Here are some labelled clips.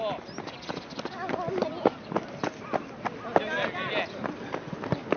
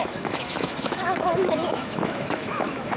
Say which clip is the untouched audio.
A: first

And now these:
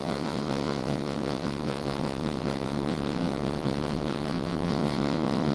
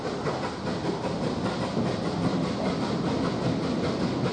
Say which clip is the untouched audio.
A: second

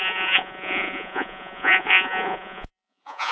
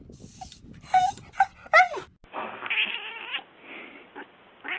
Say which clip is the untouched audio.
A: second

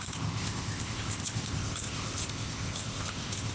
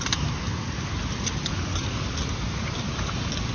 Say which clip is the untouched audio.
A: second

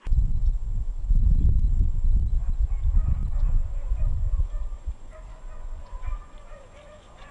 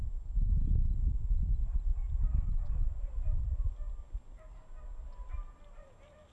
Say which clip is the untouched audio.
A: second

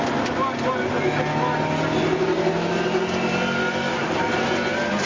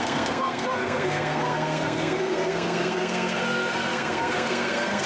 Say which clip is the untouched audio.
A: first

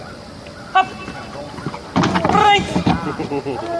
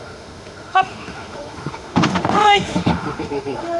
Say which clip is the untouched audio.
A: first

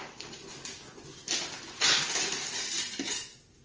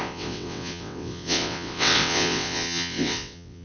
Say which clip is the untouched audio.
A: first